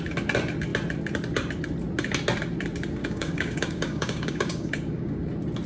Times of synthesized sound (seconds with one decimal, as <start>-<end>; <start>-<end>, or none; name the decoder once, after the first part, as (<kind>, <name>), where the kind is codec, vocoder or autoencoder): 3.0-5.3 (codec, DAC)